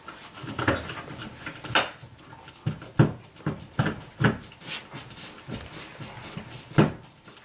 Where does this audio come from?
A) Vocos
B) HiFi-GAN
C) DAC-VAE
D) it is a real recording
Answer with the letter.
D